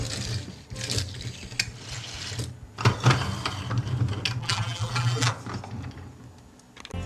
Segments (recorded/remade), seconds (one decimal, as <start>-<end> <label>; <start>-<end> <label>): 0.0-4.4 recorded; 4.4-5.3 remade; 5.3-7.1 recorded